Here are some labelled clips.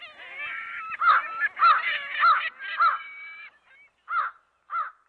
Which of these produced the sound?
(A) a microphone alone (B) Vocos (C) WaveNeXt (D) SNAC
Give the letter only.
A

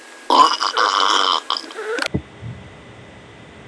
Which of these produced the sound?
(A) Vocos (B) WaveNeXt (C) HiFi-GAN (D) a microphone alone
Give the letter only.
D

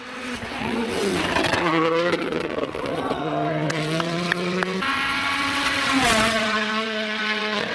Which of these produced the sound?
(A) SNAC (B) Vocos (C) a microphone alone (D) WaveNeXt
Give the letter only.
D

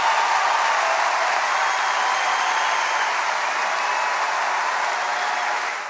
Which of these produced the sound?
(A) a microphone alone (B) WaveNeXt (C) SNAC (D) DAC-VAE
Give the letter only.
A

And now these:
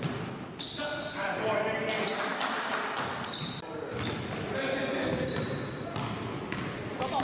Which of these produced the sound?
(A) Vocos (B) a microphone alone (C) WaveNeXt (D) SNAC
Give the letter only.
B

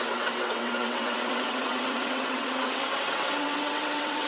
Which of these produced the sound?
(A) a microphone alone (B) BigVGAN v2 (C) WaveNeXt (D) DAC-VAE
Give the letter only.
C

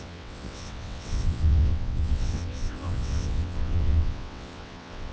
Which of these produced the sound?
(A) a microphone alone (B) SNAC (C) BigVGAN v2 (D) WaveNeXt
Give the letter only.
D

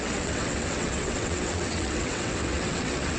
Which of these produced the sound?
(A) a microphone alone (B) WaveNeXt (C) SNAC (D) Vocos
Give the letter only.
B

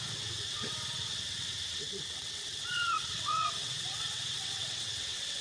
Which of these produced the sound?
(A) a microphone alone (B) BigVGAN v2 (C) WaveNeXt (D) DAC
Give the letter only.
C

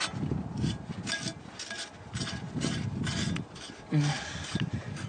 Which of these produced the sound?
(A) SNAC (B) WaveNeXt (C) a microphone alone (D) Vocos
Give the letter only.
C